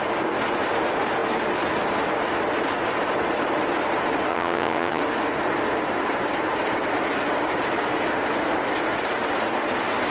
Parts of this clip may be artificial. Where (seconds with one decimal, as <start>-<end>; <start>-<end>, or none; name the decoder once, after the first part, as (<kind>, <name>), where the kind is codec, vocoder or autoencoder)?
4.3-5.0 (vocoder, HiFi-GAN)